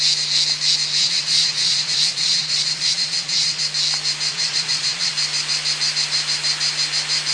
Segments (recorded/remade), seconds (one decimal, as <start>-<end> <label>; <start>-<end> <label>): 0.0-1.0 recorded; 1.0-3.6 remade; 3.6-4.3 recorded; 4.3-5.1 remade; 5.1-7.3 recorded